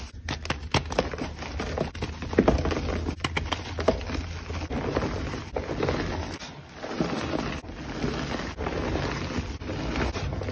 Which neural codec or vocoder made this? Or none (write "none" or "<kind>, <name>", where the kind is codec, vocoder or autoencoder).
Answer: none